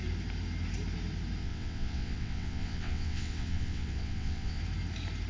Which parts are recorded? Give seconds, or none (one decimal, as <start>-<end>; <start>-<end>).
0.0-1.4; 4.6-5.3